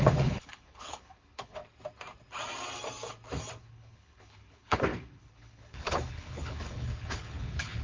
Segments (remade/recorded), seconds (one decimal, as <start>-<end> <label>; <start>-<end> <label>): 0.0-1.6 remade; 1.6-3.6 recorded; 3.6-7.8 remade